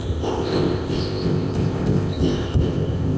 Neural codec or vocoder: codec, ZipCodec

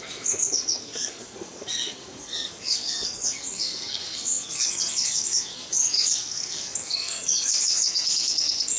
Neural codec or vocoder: codec, SNAC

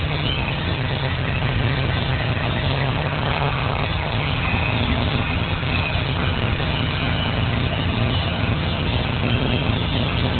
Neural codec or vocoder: vocoder, HiFi-GAN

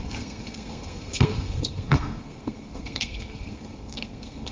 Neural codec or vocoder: codec, SNAC